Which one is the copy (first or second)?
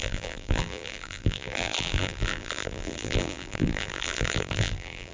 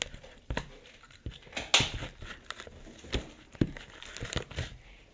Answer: first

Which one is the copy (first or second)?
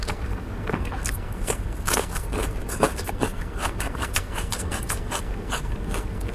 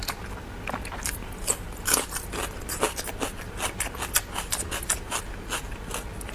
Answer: first